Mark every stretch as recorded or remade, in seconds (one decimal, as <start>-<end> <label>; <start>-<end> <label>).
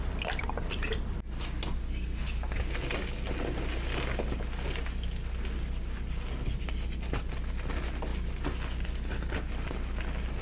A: 0.0-10.4 recorded